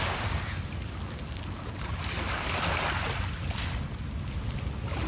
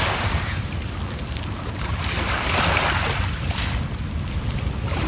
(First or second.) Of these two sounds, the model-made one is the second